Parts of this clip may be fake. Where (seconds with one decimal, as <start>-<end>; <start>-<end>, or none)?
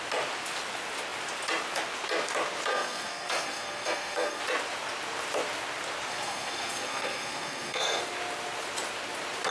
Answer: 2.7-4.4; 6.1-8.0